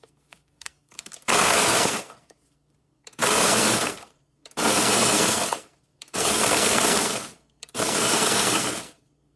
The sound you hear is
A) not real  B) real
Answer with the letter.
A